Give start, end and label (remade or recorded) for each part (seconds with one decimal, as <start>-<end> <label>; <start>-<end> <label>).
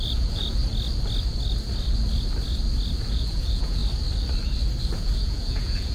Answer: 0.0-0.6 remade; 0.6-3.0 recorded; 3.0-3.8 remade; 3.8-4.8 recorded; 4.8-5.9 remade